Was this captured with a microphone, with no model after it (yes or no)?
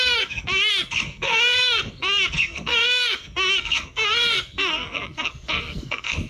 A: no